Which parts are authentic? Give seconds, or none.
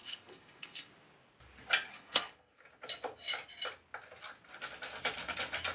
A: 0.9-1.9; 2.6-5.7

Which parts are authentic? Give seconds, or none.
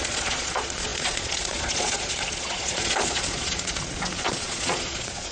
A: none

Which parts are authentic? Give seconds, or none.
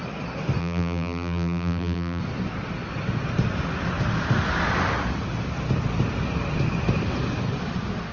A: 0.0-0.6; 2.2-8.1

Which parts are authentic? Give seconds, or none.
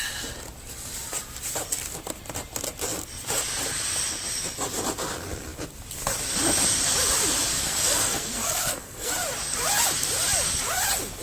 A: 0.0-7.5; 9.1-11.2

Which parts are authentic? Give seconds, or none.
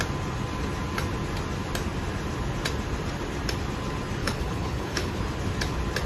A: 0.0-4.2; 5.2-6.1